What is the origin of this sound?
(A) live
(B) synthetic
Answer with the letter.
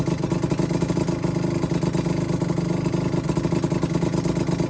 A